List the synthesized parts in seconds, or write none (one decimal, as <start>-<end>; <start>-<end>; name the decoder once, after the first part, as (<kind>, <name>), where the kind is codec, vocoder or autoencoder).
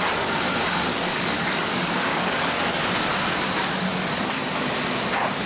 0.9-2.8 (codec, DAC)